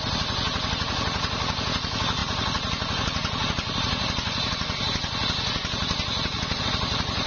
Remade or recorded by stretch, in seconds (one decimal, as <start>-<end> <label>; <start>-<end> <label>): 0.0-7.3 recorded